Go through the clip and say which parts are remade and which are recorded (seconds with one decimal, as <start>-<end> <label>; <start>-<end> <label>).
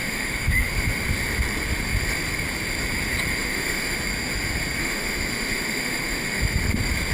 0.0-1.0 remade; 1.0-3.3 recorded; 3.3-4.0 remade; 4.0-4.8 recorded; 4.8-6.4 remade; 6.4-7.1 recorded